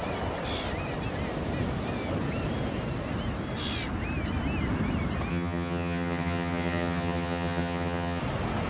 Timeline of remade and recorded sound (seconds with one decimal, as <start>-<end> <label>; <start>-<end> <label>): 0.0-5.3 recorded; 5.3-8.2 remade; 8.2-8.7 recorded